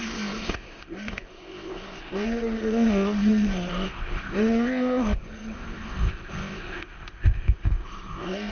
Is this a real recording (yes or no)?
no